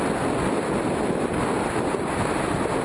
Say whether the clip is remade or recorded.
recorded